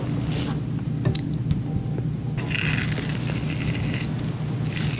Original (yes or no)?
yes